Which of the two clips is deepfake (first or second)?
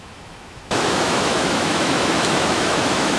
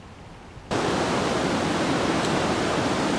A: first